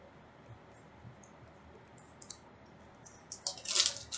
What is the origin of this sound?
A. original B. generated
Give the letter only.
A